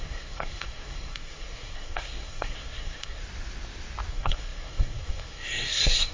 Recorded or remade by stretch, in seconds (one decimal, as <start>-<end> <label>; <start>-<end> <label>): 0.0-3.2 remade; 3.2-4.1 recorded; 4.1-6.1 remade